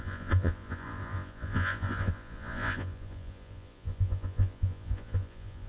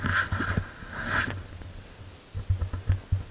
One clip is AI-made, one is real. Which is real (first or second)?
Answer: second